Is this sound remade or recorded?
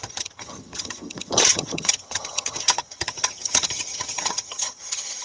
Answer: remade